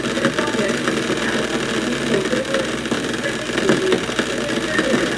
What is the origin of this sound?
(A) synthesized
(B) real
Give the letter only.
B